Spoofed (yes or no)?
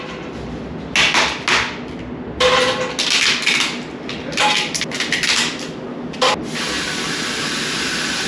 no